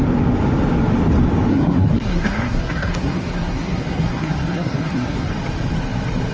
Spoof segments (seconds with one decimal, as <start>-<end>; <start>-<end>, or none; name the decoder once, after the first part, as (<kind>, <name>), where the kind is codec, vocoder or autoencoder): 1.5-5.3 (codec, SNAC)